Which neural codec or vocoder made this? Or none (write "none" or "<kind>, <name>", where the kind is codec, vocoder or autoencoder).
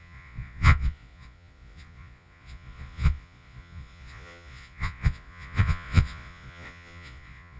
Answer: vocoder, Vocos